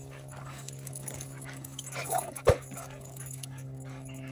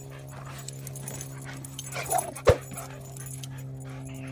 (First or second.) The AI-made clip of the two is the first